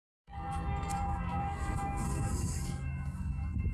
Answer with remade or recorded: remade